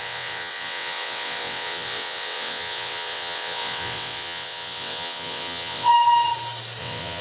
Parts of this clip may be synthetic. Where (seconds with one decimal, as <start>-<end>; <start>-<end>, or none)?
0.0-5.9; 6.8-7.2